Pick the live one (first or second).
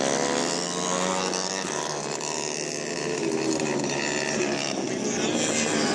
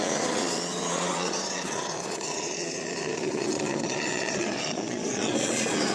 first